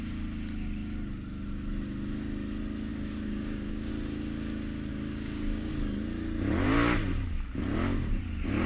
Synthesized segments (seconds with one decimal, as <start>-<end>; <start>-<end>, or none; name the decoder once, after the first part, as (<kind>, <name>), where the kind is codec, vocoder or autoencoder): 2.9-3.9 (codec, DAC); 4.9-5.7